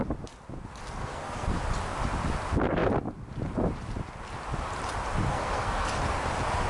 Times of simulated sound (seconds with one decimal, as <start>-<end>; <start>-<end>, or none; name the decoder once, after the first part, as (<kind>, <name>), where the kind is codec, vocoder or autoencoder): 1.0-1.6 (codec, SNAC); 5.3-6.0

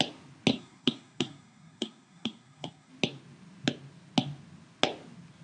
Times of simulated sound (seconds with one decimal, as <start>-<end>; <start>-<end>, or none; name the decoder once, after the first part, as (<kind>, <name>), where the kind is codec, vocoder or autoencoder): 0.5-2.9 (codec, SNAC)